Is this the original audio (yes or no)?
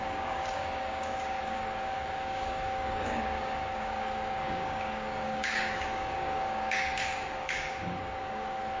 no